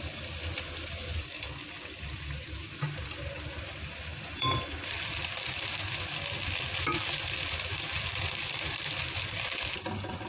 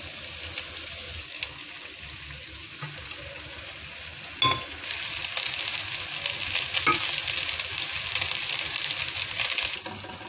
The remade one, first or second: first